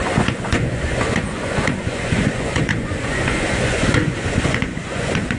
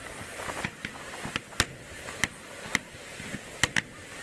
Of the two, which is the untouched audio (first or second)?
second